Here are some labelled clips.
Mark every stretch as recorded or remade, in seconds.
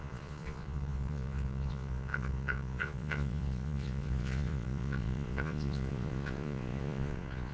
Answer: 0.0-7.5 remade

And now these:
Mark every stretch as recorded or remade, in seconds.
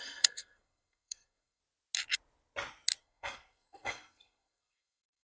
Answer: 0.0-1.6 remade; 1.6-3.0 recorded; 3.0-5.3 remade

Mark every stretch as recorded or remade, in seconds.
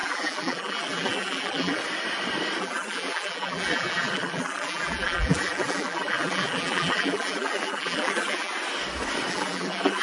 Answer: 0.0-1.8 remade; 1.8-2.6 recorded; 2.6-8.5 remade; 8.5-9.3 recorded; 9.3-10.0 remade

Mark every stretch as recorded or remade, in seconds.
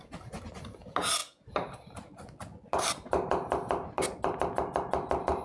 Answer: 0.0-5.4 recorded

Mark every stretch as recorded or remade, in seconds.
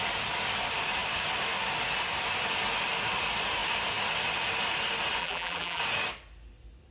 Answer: 0.0-5.2 recorded; 5.2-5.8 remade; 5.8-6.9 recorded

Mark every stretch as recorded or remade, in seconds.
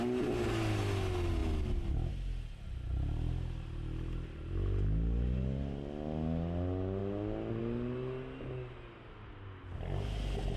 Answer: 0.0-10.6 recorded